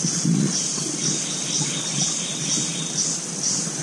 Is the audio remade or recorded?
recorded